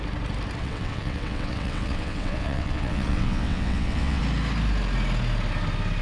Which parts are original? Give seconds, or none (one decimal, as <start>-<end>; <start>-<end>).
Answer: 0.0-0.6; 4.2-6.0